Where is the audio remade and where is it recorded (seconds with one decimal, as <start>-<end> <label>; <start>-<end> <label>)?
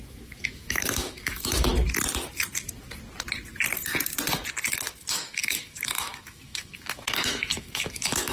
0.0-1.7 remade; 1.7-5.0 recorded; 5.0-8.3 remade